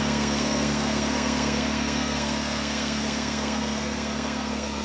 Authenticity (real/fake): fake